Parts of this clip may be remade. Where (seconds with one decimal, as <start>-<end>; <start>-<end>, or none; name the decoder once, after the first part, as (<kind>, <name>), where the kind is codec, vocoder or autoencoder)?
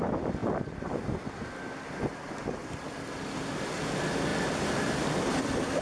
0.4-1.7 (vocoder, BigVGAN v2); 2.6-3.8; 4.3-5.8